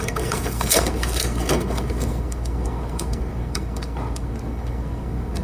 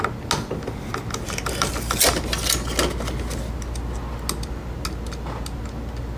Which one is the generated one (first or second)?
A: first